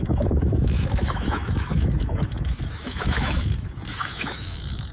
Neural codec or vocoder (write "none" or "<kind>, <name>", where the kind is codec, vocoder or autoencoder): autoencoder, DAC-VAE